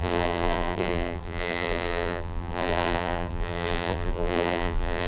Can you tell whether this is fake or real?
fake